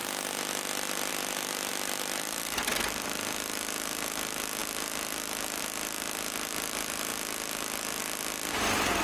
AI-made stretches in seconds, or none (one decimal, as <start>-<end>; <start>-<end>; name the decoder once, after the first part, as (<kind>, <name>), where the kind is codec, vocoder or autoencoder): 0.0-1.1 (vocoder, BigVGAN v2)